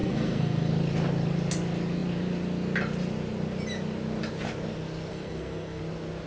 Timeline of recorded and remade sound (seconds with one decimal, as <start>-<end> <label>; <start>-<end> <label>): 0.0-0.7 remade; 0.7-5.1 recorded; 5.1-5.8 remade; 5.8-6.3 recorded